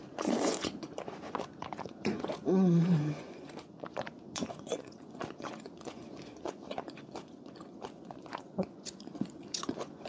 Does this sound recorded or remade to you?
remade